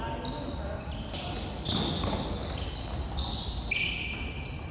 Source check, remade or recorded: recorded